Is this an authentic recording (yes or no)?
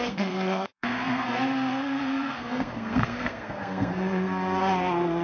no